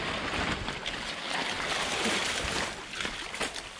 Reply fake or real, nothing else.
real